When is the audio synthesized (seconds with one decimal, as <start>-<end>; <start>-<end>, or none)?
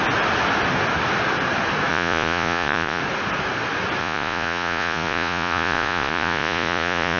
1.9-3.0; 4.0-7.2